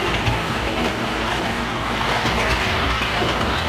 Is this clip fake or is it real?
fake